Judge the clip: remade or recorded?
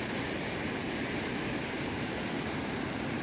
remade